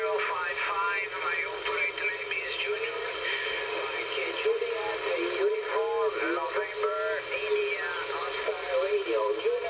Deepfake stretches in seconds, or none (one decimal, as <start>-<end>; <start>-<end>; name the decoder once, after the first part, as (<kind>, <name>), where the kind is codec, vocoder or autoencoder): none